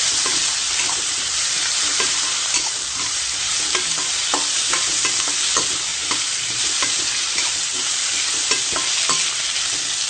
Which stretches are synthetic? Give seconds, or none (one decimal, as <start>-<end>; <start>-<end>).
0.6-3.2; 5.9-8.3